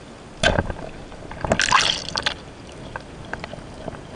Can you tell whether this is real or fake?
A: real